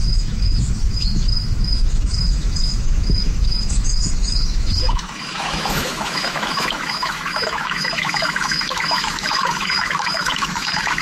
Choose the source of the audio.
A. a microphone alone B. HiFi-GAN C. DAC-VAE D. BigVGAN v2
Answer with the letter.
C